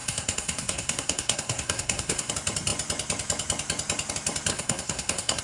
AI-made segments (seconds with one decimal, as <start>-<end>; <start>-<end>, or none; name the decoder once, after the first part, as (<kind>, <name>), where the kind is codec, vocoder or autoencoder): 0.0-2.3 (codec, SNAC); 4.5-5.4